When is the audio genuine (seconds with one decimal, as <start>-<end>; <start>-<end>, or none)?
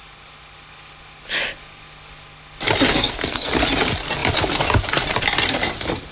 0.0-2.9; 3.5-6.1